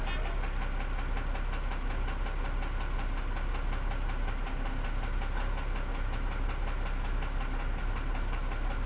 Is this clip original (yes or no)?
yes